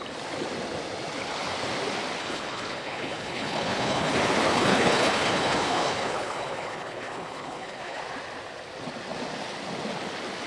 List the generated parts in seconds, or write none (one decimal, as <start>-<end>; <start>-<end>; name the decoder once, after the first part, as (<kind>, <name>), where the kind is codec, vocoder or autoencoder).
2.2-4.1 (codec, HILCodec); 4.5-8.0

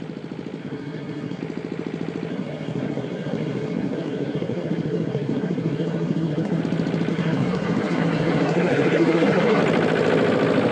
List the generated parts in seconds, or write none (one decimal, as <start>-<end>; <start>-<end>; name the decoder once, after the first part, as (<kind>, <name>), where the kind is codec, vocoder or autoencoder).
0.6-1.4 (codec, SNAC); 2.3-6.6; 7.1-9.6